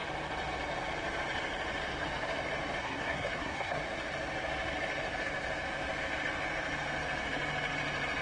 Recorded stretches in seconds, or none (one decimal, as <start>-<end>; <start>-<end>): 0.0-2.8; 3.8-8.2